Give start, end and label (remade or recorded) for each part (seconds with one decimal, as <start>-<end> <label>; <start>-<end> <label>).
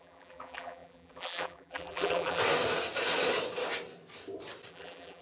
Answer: 0.0-2.4 remade; 2.4-4.7 recorded; 4.7-5.2 remade